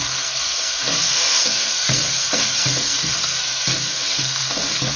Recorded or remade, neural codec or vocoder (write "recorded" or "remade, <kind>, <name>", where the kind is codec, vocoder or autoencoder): remade, codec, SNAC